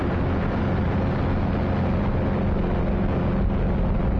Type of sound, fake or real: real